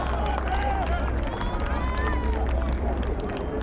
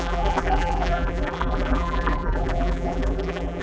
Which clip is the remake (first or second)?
second